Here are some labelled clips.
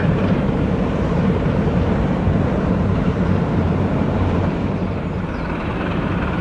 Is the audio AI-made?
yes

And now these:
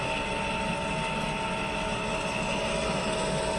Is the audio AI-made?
no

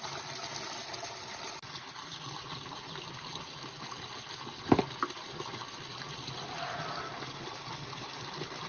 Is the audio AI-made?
no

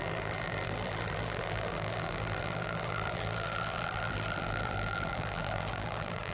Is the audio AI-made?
yes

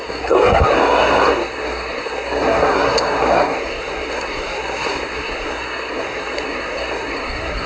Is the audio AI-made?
yes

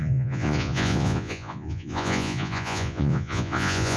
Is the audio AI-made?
yes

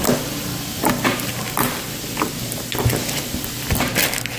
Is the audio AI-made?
no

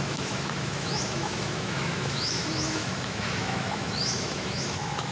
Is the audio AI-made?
yes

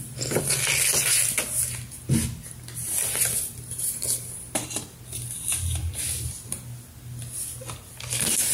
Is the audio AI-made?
no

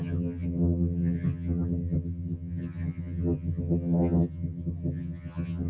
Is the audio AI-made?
yes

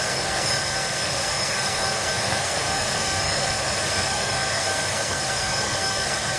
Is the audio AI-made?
yes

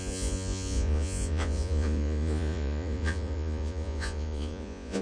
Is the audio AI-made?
yes